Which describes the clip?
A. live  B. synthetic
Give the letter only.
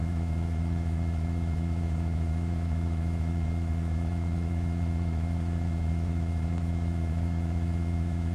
B